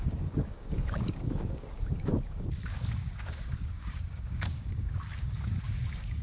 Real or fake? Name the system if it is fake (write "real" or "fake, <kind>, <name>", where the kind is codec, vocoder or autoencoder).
fake, codec, DAC